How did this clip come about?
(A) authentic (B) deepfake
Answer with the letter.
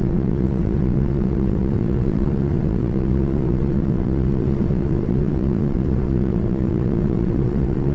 B